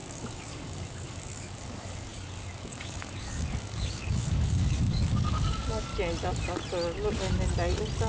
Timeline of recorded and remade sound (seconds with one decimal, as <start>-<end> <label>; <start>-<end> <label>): 0.0-5.9 remade; 5.9-8.1 recorded